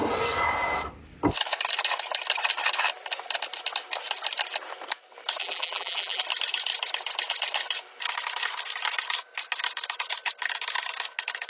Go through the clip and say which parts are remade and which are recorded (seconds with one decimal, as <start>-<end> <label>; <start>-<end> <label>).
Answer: 0.0-5.4 recorded; 5.4-6.2 remade; 6.2-11.5 recorded